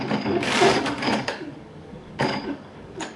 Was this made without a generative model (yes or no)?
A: no